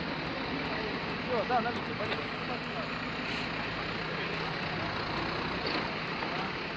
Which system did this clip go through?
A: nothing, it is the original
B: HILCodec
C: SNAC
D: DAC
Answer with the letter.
A